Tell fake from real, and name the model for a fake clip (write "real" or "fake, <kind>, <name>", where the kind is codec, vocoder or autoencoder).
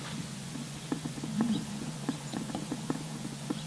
fake, vocoder, Vocos